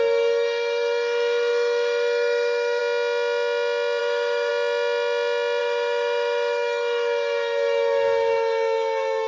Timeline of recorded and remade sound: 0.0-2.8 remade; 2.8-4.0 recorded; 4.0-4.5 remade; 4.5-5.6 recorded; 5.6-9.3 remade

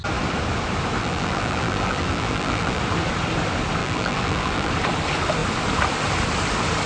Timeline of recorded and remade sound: 0.0-1.0 recorded; 1.0-2.8 remade; 2.8-3.8 recorded; 3.8-4.7 remade; 4.7-6.9 recorded

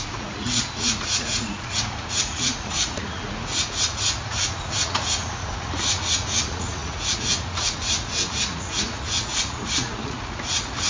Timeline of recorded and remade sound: 0.0-10.9 remade

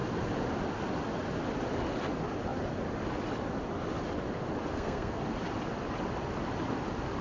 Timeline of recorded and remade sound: 0.0-4.7 recorded; 4.7-5.2 remade; 5.2-7.2 recorded